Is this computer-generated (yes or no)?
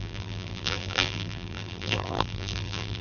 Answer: yes